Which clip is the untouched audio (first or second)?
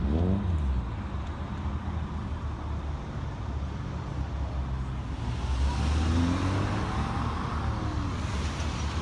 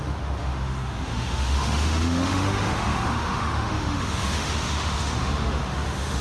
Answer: first